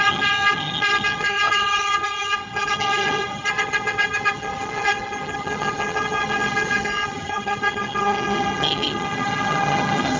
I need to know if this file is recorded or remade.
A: remade